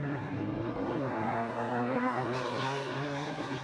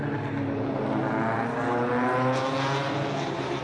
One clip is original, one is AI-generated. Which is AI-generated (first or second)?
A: first